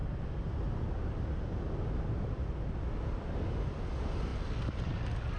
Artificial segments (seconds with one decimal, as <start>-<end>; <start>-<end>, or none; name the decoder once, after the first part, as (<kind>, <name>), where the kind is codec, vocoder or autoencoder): none